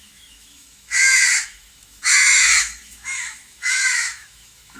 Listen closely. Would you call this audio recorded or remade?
remade